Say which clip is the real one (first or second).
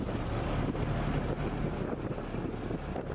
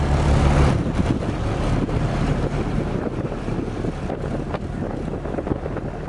first